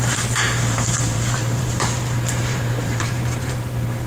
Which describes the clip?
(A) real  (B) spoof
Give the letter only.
B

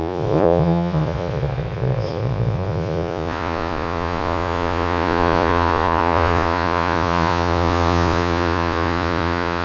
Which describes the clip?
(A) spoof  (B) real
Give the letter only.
A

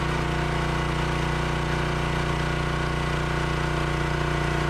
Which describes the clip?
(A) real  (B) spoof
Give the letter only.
A